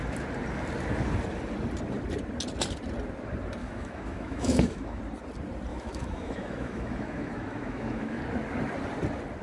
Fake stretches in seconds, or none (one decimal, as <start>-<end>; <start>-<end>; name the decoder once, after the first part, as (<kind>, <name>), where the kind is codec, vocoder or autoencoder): 3.6-5.0 (autoencoder, DAC-VAE); 5.7-8.2